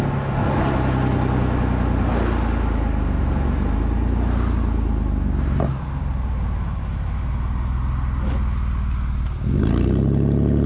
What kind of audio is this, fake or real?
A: real